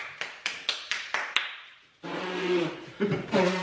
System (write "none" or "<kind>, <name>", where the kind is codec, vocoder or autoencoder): vocoder, BigVGAN v2